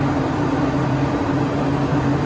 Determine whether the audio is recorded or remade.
recorded